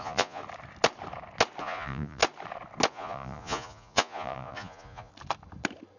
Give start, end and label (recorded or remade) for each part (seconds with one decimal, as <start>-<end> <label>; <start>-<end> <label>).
0.0-0.4 remade; 0.4-1.6 recorded; 1.6-2.2 remade; 2.2-2.9 recorded; 2.9-5.1 remade; 5.1-6.0 recorded